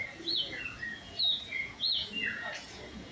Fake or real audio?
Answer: fake